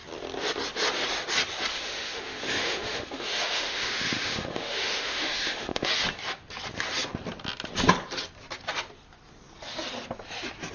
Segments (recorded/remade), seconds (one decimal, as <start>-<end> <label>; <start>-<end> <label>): 0.0-1.7 recorded; 1.7-5.9 remade; 5.9-10.7 recorded